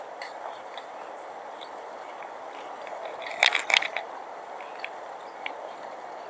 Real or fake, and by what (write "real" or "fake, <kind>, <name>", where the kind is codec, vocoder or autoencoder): real